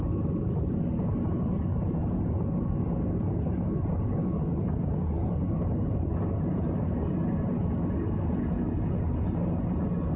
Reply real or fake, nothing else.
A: real